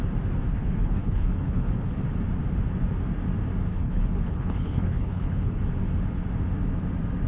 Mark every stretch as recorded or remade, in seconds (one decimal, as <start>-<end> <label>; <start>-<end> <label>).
0.0-0.5 recorded; 0.5-2.0 remade; 2.0-3.7 recorded; 3.7-5.6 remade; 5.6-7.3 recorded